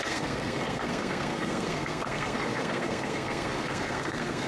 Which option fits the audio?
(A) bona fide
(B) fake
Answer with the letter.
B